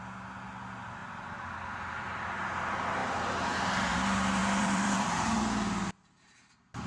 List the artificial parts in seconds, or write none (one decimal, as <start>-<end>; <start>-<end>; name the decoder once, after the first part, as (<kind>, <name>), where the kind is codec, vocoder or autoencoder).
4.4-5.4 (vocoder, BigVGAN v2)